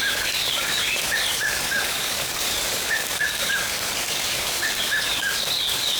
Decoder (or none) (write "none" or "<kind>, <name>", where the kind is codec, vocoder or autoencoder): codec, DAC